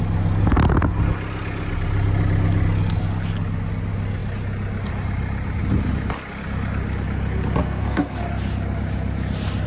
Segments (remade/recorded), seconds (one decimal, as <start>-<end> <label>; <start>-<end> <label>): 0.0-7.6 recorded; 7.6-8.2 remade; 8.2-9.7 recorded